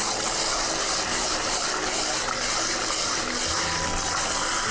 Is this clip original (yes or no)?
yes